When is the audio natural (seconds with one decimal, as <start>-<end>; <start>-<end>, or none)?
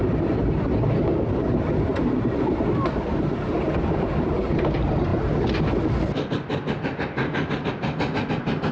0.0-8.7